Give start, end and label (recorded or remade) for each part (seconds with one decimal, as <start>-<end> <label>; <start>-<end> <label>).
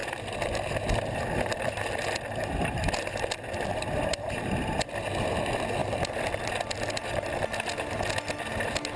0.0-5.0 remade; 5.0-9.0 recorded